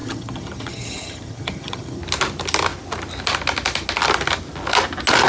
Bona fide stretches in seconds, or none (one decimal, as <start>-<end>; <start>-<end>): 2.0-5.3